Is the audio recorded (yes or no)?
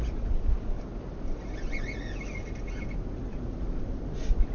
yes